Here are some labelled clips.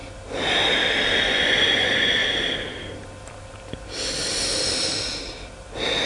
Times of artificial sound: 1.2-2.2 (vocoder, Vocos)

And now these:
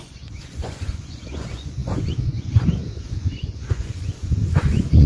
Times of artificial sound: 0.0-5.1 (vocoder, Vocos)

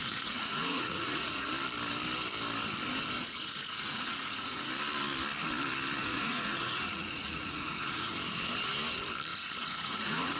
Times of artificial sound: 0.0-1.5 (vocoder, Vocos); 3.2-4.7; 6.0-8.1; 9.3-10.4

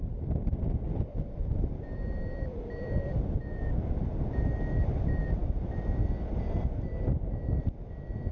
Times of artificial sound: none

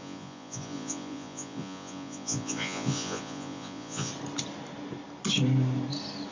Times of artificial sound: 0.0-4.1 (vocoder, Vocos)

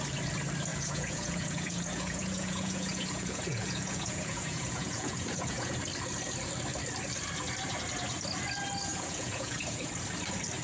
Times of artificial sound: 0.7-5.7 (vocoder, Vocos); 8.9-9.9

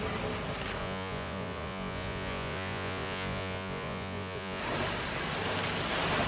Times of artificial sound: 0.8-4.6 (vocoder, Vocos)